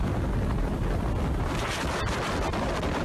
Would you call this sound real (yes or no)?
yes